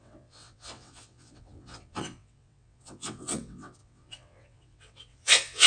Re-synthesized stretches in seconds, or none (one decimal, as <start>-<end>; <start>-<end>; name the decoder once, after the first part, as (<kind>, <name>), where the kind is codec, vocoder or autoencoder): 0.0-5.7 (vocoder, WaveNeXt)